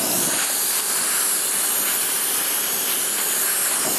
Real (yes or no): yes